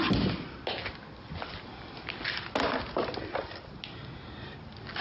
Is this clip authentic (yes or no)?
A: yes